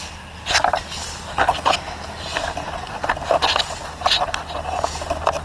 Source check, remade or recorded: recorded